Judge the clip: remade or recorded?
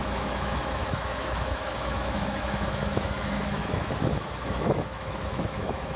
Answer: remade